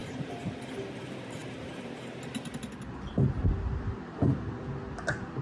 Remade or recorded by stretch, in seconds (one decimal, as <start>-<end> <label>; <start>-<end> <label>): 0.0-0.7 remade; 0.7-5.4 recorded